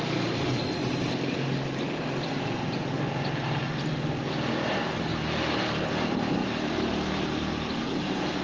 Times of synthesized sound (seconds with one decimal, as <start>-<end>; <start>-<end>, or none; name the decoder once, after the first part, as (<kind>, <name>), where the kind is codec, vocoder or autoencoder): none